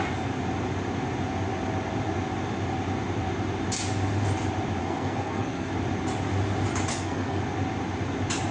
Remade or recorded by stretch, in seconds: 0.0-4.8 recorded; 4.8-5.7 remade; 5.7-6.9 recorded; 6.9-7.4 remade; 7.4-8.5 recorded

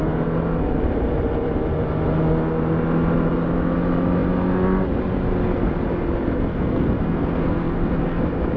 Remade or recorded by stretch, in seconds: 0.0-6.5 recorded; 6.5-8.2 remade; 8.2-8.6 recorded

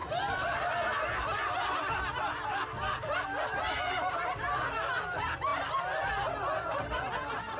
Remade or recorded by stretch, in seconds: 0.0-7.6 recorded

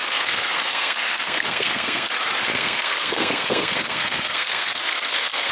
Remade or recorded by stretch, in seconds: 0.0-2.1 remade; 2.1-2.5 recorded; 2.5-5.5 remade